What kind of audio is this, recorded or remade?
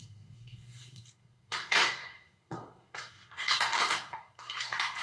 remade